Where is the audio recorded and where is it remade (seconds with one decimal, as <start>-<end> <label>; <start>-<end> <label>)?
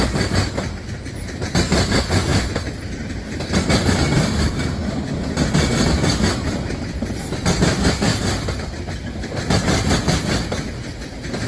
0.0-4.8 remade; 4.8-7.5 recorded; 7.5-8.1 remade; 8.1-8.8 recorded; 8.8-11.5 remade